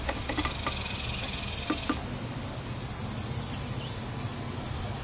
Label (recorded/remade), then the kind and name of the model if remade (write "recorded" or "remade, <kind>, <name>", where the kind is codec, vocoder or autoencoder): recorded